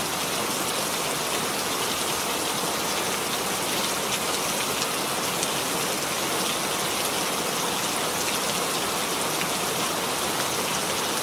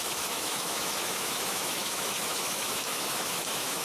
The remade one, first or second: second